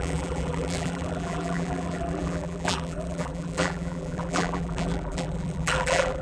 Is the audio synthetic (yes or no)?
yes